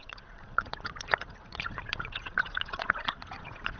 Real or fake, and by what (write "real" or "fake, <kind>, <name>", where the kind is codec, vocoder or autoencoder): fake, vocoder, Vocos